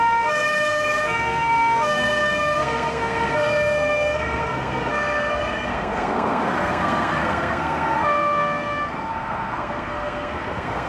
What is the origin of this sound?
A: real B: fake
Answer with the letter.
B